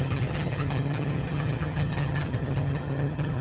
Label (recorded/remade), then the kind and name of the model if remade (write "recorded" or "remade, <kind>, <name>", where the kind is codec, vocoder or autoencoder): remade, vocoder, HiFi-GAN